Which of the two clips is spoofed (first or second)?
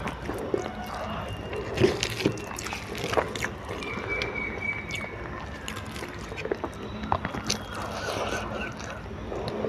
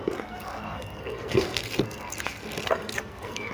second